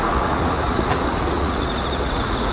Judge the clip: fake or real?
fake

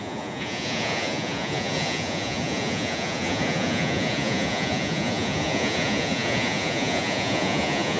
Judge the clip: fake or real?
fake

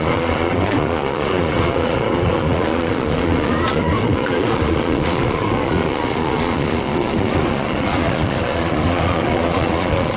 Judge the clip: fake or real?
fake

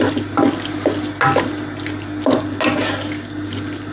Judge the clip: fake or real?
real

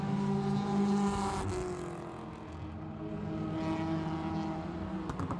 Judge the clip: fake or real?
real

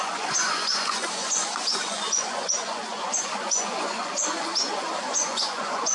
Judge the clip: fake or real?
fake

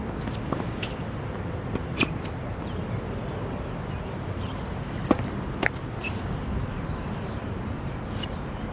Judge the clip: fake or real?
real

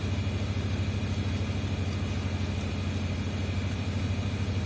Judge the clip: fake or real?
real